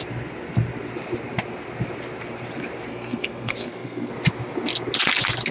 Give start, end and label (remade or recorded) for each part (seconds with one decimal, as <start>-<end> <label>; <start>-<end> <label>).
0.0-2.9 recorded; 2.9-4.1 remade; 4.1-5.5 recorded